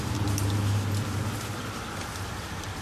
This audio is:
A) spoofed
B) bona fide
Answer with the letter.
B